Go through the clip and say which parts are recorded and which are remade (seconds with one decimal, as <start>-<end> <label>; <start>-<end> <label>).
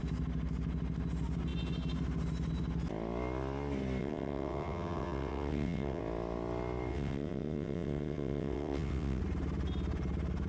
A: 0.0-4.0 recorded; 4.0-6.0 remade; 6.0-6.9 recorded; 6.9-9.2 remade; 9.2-10.5 recorded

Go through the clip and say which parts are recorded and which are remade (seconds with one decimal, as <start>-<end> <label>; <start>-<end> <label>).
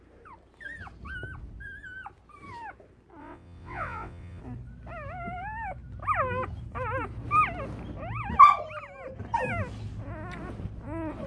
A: 0.0-3.2 recorded; 3.2-4.4 remade; 4.4-11.3 recorded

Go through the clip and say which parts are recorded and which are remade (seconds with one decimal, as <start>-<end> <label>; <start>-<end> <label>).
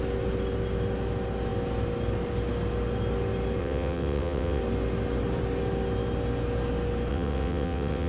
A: 0.0-3.6 recorded; 3.6-4.6 remade; 4.6-7.1 recorded; 7.1-8.1 remade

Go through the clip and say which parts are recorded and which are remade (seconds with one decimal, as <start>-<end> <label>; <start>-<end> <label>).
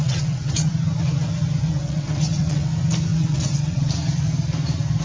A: 0.0-0.7 remade; 0.7-1.6 recorded; 1.6-2.7 remade; 2.7-3.1 recorded; 3.1-3.9 remade; 3.9-5.0 recorded